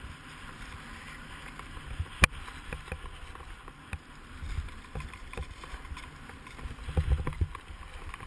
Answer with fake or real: real